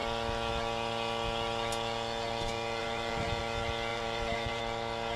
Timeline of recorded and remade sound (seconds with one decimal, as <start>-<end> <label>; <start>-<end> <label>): 0.0-2.8 recorded; 2.8-3.4 remade; 3.4-3.9 recorded; 3.9-4.6 remade; 4.6-5.2 recorded